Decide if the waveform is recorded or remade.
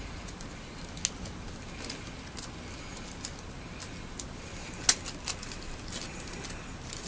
recorded